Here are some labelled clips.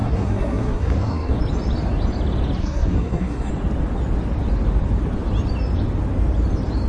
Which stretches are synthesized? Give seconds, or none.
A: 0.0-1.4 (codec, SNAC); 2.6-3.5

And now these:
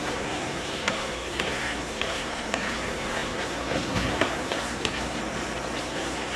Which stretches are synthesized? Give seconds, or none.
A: 0.0-5.2 (codec, SNAC); 5.8-6.4